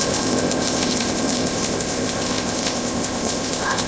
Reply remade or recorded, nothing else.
remade